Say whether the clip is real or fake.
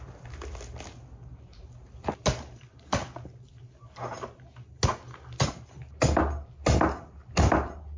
real